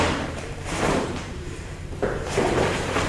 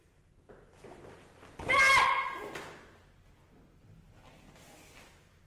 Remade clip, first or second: first